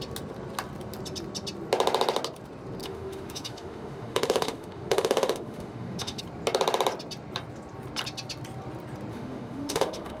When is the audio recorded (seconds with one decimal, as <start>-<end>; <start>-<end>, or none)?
0.0-2.8; 6.2-9.1